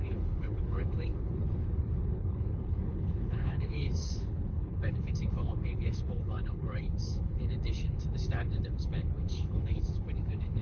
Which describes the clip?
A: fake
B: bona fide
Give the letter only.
A